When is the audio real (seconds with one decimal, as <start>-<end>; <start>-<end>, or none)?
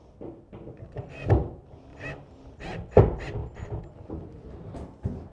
0.0-1.9; 3.0-5.3